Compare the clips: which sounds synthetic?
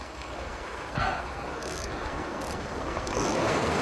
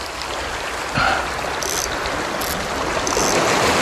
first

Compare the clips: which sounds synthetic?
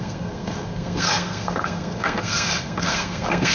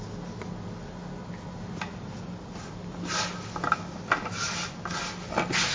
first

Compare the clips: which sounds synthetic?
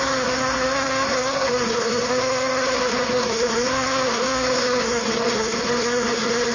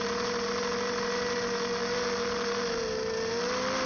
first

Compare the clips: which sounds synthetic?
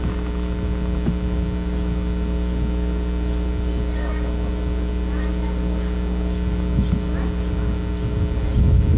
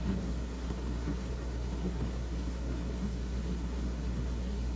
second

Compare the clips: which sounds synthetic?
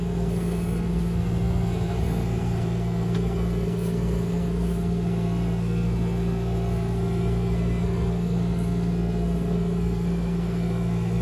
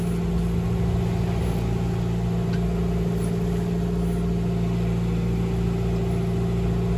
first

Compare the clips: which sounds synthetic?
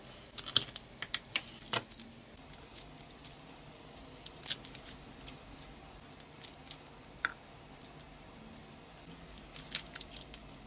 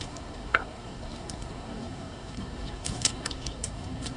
second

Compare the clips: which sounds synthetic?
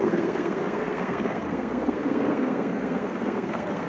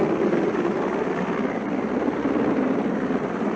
first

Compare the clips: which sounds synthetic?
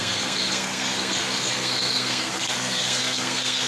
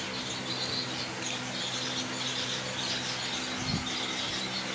first